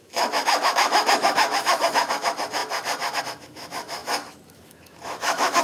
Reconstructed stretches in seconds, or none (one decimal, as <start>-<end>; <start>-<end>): 0.0-5.6